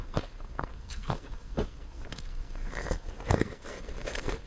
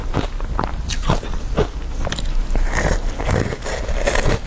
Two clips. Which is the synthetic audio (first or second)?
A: first